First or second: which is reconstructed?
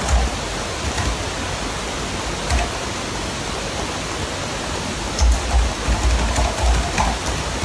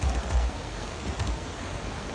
second